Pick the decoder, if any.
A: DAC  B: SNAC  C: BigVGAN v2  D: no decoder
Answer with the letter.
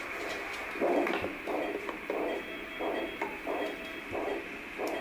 D